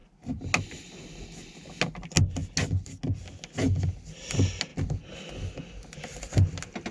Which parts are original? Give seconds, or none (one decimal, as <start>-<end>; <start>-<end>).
0.0-6.9